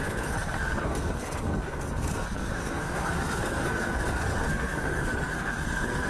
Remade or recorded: remade